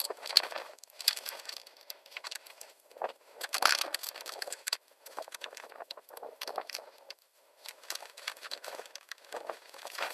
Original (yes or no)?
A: no